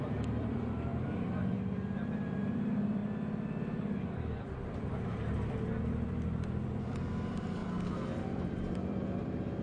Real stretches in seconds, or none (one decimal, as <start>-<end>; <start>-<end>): 3.0-4.4